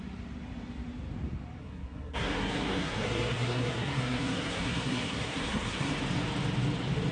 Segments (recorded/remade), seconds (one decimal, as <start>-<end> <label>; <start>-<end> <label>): 0.0-1.6 recorded; 1.6-5.9 remade; 5.9-7.1 recorded